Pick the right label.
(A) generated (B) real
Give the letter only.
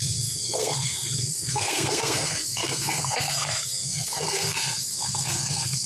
A